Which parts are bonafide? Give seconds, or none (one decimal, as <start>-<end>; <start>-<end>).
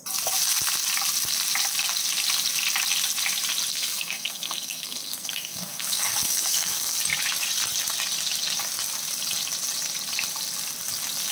0.0-3.7; 7.0-11.3